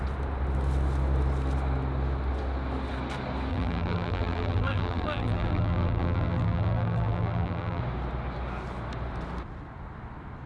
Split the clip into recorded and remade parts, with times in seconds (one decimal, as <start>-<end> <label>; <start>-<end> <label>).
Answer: 0.0-3.5 recorded; 3.5-7.8 remade; 7.8-10.5 recorded